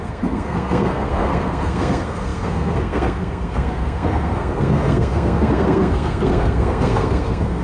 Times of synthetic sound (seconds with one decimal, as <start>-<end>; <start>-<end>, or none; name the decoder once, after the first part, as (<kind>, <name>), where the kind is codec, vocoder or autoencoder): 0.0-7.6 (codec, SNAC)